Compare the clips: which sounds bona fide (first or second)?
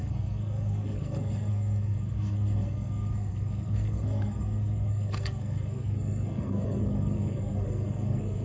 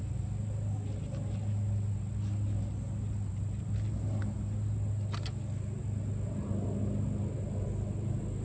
second